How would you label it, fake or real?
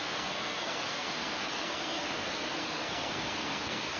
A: fake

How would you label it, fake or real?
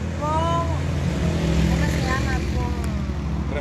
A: real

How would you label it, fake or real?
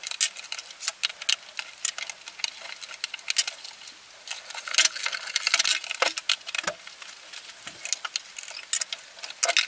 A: real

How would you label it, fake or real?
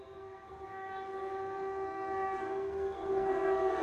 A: fake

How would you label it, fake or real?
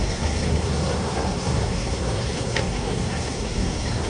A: fake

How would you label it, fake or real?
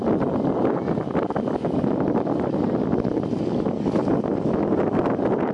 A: real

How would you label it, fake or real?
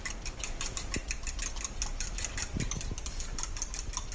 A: real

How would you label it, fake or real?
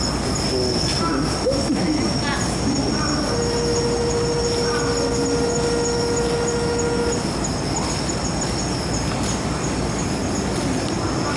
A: real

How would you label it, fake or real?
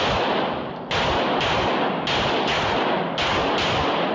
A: real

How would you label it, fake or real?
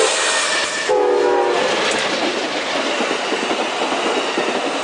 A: real